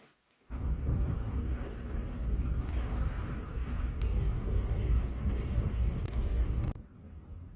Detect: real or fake fake